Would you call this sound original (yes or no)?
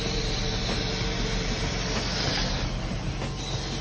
yes